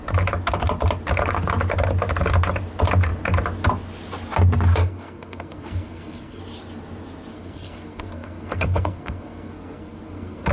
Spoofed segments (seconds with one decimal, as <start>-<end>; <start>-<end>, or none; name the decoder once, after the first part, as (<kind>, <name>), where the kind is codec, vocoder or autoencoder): 4.7-6.4 (codec, SNAC); 7.3-10.5